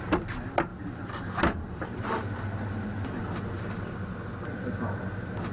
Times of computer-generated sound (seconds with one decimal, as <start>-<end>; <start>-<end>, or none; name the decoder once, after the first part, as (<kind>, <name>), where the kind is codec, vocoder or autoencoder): 0.7-4.0 (vocoder, BigVGAN v2)